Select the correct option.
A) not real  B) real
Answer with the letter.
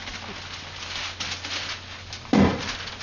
B